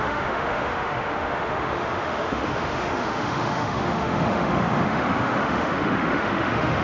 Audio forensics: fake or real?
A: fake